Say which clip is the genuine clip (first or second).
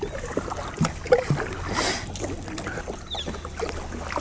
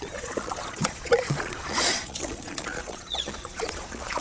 first